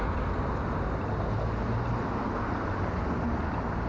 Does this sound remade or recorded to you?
recorded